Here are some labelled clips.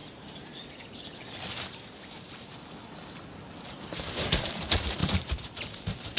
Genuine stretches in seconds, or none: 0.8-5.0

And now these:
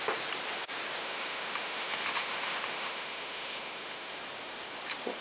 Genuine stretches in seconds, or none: 0.0-1.0; 4.1-5.2

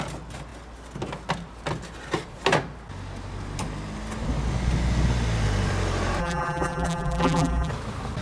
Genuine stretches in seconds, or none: 0.0-6.2; 7.7-8.2

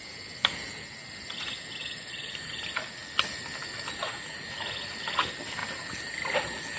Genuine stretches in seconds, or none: 0.0-1.8; 2.3-6.8

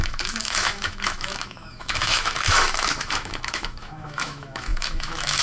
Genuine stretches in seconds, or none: none

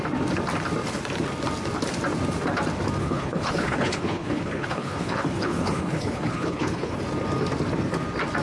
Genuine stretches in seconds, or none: 0.0-3.0; 7.0-8.4

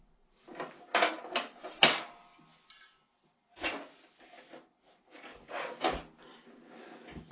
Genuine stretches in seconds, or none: 0.0-7.3